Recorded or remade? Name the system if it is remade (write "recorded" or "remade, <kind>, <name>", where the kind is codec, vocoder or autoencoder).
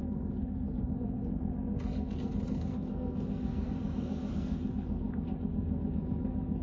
remade, codec, SNAC